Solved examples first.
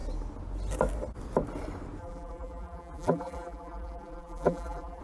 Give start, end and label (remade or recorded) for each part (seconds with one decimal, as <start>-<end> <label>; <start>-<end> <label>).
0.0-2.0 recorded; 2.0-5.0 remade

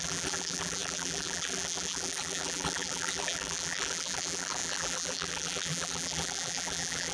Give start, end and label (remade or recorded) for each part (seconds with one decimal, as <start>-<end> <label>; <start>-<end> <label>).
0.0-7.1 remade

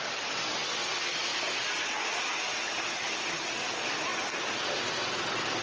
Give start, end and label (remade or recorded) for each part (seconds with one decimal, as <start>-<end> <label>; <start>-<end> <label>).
0.0-5.6 recorded

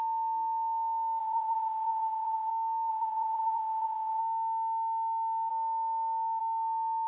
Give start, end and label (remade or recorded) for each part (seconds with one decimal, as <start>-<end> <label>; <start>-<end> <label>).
0.0-1.2 recorded; 1.2-2.5 remade; 2.5-2.9 recorded; 2.9-4.2 remade; 4.2-7.1 recorded